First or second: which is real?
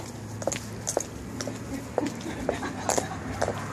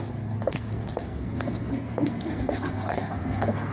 first